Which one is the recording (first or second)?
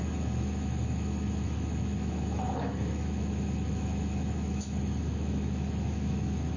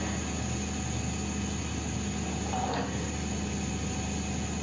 second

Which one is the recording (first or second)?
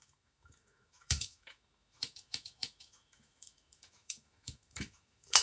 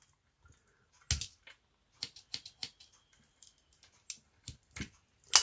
second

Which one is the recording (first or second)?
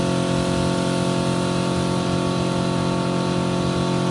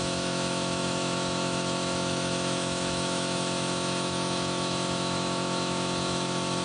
first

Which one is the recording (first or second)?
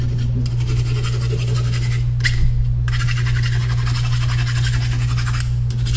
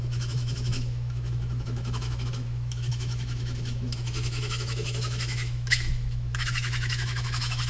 first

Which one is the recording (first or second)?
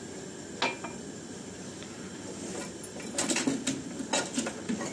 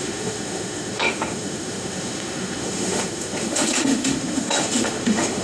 first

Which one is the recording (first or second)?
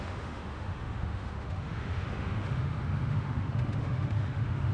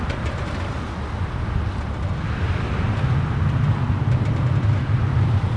second